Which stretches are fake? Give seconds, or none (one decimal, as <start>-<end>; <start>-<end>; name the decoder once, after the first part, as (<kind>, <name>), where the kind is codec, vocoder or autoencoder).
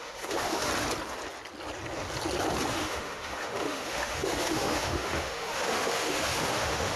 0.0-0.7 (autoencoder, DAC-VAE); 2.7-7.0